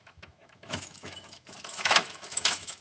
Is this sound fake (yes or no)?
yes